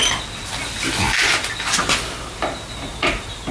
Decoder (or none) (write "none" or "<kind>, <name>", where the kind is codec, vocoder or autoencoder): none